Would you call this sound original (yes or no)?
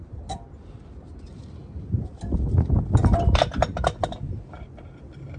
yes